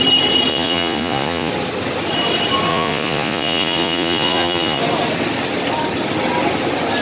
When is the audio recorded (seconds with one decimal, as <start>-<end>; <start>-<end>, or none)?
0.0-0.5; 1.5-2.7; 4.8-7.0